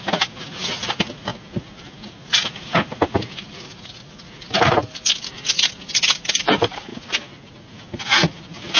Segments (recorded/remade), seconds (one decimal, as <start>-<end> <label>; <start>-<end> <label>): 0.0-8.8 recorded